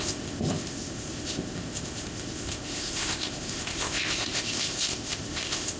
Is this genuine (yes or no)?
no